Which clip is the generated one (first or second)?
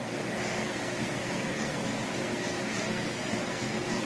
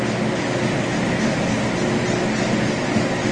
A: first